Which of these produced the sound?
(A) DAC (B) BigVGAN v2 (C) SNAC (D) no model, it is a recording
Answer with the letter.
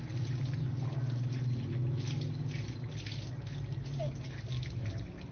D